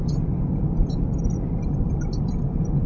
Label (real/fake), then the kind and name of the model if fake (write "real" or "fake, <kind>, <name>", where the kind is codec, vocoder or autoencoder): real